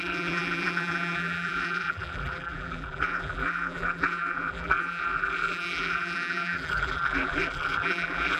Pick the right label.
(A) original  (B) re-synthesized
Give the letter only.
B